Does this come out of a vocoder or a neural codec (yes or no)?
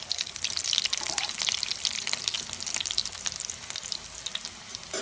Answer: no